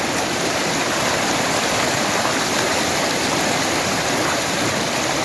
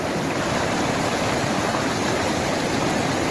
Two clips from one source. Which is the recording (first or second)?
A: second